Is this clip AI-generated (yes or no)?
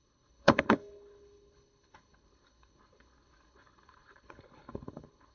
yes